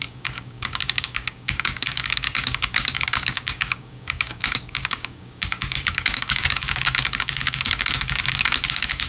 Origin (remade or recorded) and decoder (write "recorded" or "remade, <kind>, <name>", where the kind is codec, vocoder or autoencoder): remade, codec, DAC